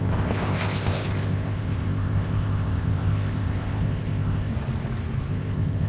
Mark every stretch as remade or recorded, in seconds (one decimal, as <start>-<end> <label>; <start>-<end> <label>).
0.0-4.5 remade; 4.5-5.3 recorded; 5.3-5.9 remade